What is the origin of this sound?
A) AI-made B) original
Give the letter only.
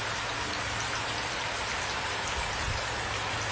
B